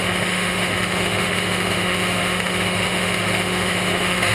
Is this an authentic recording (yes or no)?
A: no